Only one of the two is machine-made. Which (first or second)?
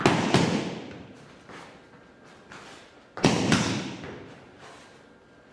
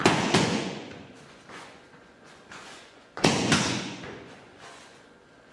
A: second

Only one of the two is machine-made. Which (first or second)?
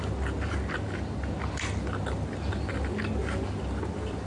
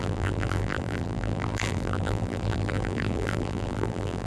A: second